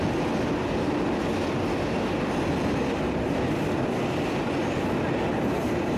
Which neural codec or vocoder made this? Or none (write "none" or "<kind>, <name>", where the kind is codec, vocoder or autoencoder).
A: none